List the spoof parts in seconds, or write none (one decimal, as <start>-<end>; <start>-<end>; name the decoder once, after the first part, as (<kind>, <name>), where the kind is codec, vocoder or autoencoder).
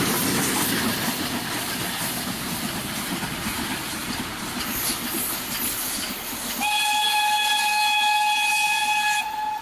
4.0-4.9 (vocoder, BigVGAN v2)